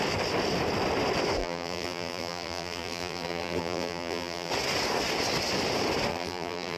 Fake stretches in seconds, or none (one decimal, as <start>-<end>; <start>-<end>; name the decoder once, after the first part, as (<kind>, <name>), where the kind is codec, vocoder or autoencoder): 1.4-4.5 (vocoder, BigVGAN v2); 6.1-6.8